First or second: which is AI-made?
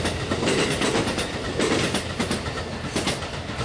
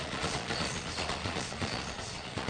second